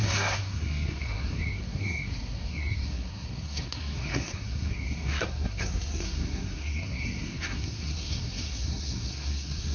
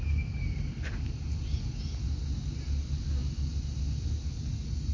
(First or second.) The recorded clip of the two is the second